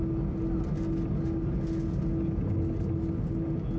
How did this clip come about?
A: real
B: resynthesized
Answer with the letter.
A